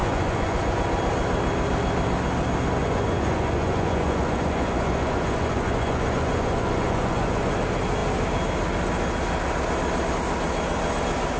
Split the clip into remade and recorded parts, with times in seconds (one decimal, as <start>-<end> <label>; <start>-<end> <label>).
0.0-0.8 remade; 0.8-2.8 recorded; 2.8-7.5 remade; 7.5-11.4 recorded